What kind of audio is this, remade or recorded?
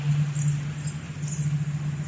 recorded